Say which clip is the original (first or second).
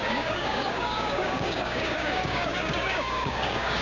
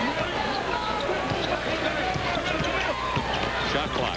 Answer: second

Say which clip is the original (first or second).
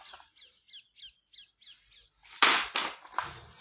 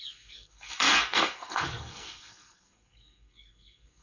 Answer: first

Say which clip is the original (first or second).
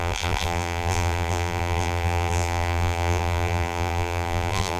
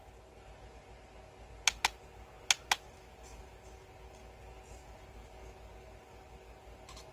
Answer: second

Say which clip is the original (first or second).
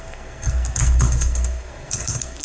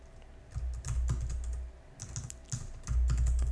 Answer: second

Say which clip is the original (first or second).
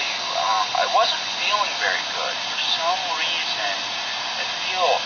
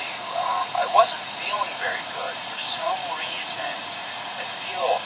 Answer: first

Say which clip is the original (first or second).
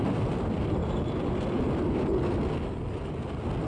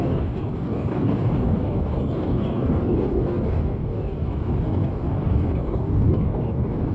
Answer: first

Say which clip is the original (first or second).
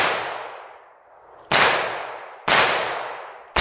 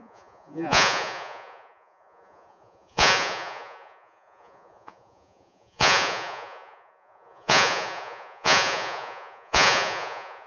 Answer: first